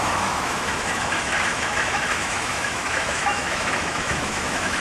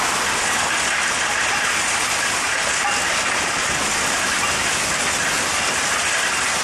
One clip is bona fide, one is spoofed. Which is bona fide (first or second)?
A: second